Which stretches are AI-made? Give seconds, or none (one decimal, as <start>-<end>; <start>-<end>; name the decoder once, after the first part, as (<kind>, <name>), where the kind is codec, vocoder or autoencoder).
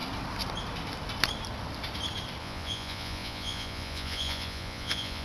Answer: 2.4-5.2 (vocoder, Vocos)